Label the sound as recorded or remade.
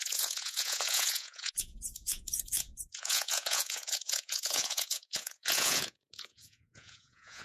remade